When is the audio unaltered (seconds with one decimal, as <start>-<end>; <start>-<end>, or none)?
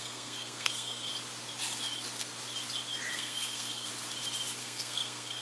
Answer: 1.1-3.1; 3.9-4.6